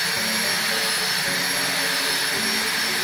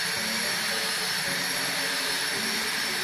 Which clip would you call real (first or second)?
first